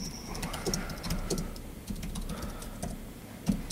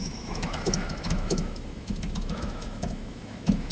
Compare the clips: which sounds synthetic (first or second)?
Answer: second